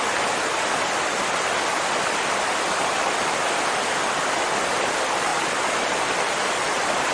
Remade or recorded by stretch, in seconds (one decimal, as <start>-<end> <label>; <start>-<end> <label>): 0.0-7.1 recorded